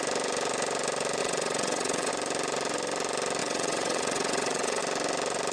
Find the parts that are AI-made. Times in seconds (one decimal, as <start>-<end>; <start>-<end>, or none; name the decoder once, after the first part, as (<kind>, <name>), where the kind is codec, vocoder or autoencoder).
1.2-2.1 (vocoder, WaveNeXt); 3.4-4.8